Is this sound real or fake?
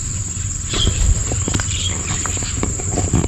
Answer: fake